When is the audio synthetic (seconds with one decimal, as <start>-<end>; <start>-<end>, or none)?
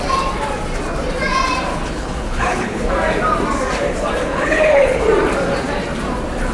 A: 1.7-2.9; 4.3-5.0